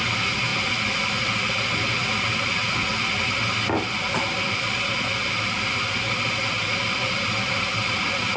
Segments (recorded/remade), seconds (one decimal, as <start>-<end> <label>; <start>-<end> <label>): 0.0-8.4 recorded